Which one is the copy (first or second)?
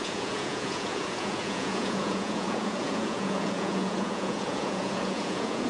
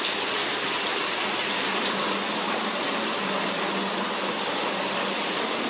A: first